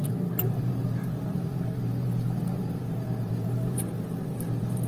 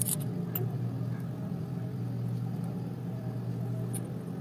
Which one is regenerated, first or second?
first